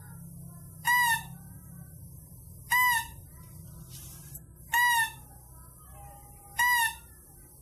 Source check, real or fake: real